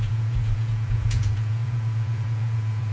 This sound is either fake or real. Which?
fake